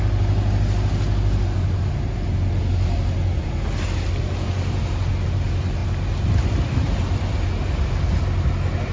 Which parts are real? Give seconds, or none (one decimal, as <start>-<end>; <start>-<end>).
0.0-8.9

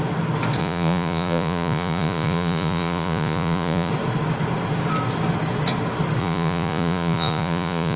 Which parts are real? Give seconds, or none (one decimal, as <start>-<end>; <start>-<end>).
0.0-0.6; 3.9-6.2

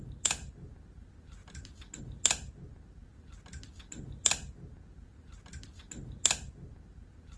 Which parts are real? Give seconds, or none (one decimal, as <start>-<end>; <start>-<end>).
0.0-7.4

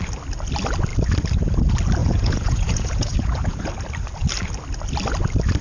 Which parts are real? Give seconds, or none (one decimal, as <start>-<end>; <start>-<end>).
0.0-2.0; 3.7-5.6

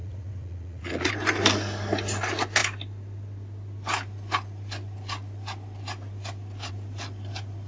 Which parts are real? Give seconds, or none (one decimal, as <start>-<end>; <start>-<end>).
1.1-7.7

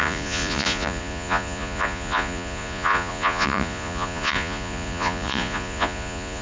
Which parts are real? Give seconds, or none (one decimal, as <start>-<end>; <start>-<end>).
none

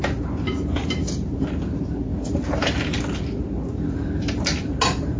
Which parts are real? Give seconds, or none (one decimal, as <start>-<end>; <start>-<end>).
0.0-5.2